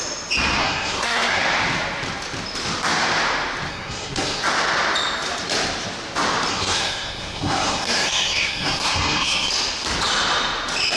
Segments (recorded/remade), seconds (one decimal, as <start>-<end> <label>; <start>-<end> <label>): 0.0-0.6 recorded; 0.6-1.4 remade; 1.4-3.7 recorded; 3.7-4.4 remade; 4.4-6.5 recorded; 6.5-9.5 remade; 9.5-11.0 recorded